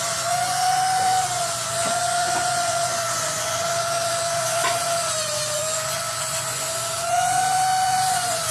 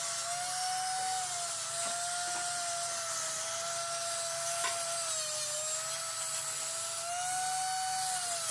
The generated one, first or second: first